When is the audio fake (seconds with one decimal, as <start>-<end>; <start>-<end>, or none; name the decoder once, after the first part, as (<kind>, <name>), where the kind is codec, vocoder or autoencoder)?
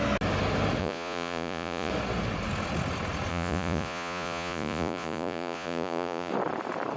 0.8-1.9 (vocoder, Vocos); 3.3-6.3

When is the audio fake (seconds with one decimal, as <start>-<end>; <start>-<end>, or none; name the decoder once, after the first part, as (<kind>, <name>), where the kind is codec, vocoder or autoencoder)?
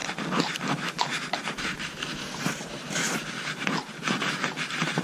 0.9-5.0 (vocoder, BigVGAN v2)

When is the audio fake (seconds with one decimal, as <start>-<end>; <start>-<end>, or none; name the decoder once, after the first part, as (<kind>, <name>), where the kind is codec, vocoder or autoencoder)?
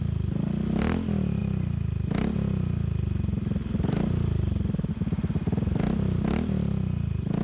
none